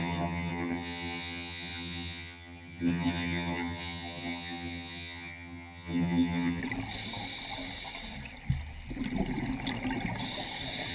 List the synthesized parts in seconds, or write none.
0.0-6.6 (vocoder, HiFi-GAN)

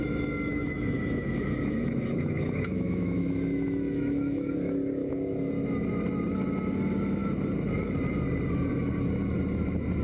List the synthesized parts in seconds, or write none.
0.5-4.5 (autoencoder, DAC-VAE); 5.0-5.5

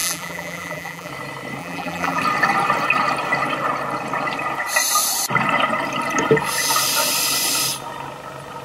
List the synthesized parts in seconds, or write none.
0.0-1.1 (vocoder, BigVGAN v2); 1.6-2.2